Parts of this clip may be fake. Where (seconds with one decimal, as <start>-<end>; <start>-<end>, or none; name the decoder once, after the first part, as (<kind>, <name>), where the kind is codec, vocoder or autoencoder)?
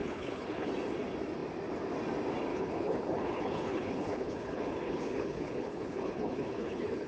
0.0-0.7 (codec, HILCodec); 2.5-7.1